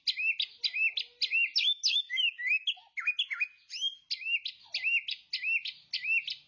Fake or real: real